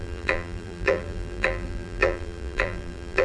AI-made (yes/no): yes